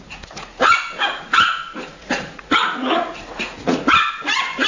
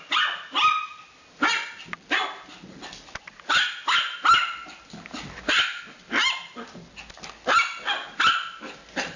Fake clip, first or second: first